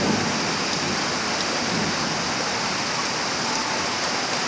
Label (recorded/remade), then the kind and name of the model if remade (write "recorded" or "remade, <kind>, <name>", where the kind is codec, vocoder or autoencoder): recorded